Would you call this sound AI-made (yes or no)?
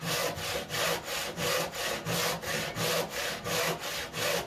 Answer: no